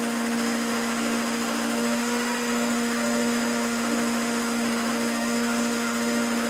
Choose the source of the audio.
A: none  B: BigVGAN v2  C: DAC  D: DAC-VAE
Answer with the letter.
D